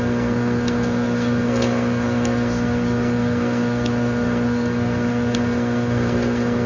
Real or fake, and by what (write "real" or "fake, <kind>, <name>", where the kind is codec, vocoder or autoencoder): fake, codec, SNAC